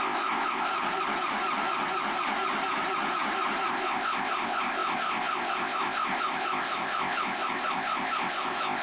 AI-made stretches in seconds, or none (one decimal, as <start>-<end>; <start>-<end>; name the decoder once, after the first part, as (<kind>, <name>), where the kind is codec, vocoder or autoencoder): 0.0-0.7 (codec, ZipCodec); 3.7-8.8